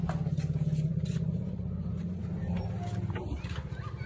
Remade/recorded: recorded